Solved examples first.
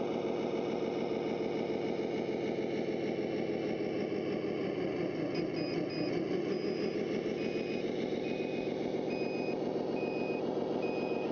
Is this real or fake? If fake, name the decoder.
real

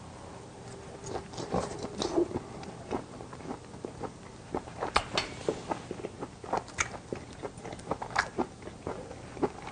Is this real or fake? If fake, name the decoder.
real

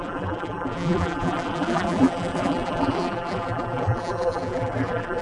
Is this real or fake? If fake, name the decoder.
fake, vocoder, BigVGAN v2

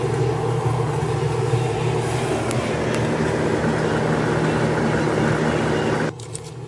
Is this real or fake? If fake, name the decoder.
real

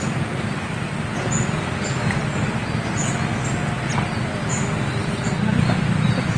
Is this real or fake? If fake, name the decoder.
real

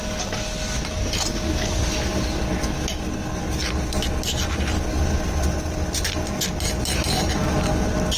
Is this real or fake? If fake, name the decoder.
real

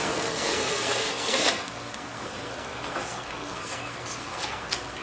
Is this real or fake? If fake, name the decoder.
fake, codec, SNAC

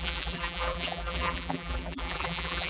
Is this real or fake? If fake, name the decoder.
fake, vocoder, BigVGAN v2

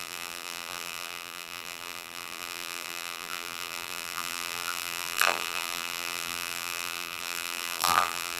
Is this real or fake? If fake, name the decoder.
fake, vocoder, BigVGAN v2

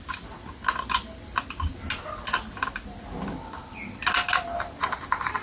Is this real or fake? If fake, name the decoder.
real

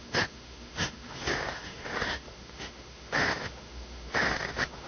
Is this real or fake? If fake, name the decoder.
fake, autoencoder, DAC-VAE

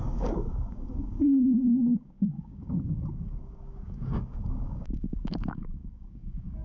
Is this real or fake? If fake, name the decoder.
fake, codec, DAC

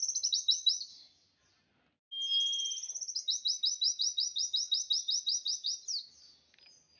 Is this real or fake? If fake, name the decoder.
real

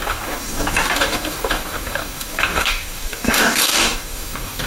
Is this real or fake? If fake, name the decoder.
fake, codec, DAC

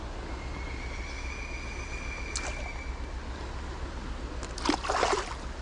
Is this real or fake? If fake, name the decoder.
real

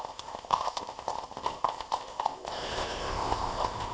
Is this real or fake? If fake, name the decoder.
fake, codec, ZipCodec